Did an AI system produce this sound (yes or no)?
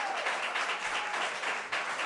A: no